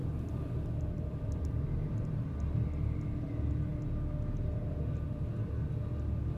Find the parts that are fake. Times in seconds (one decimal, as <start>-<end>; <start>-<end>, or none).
0.0-1.5